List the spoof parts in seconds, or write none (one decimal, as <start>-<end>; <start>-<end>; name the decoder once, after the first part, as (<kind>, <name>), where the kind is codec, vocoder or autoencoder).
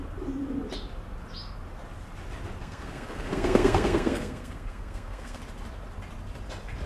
2.6-5.4 (codec, SNAC)